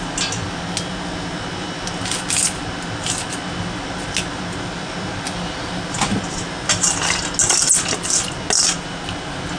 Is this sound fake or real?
real